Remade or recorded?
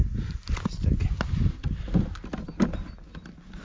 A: recorded